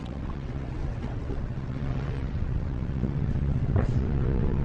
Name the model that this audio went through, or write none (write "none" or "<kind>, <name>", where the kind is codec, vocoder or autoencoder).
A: vocoder, WaveNeXt